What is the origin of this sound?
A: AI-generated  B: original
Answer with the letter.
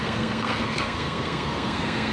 A